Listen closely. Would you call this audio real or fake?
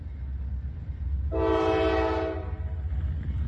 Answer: real